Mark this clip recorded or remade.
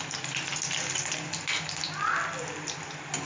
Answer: recorded